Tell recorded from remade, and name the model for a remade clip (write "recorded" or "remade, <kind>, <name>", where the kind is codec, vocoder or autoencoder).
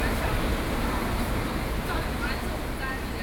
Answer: recorded